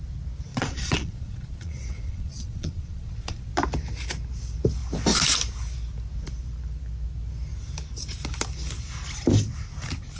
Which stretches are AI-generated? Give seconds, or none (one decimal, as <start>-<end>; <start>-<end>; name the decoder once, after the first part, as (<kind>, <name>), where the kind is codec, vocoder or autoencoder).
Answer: 0.5-3.5 (vocoder, Vocos)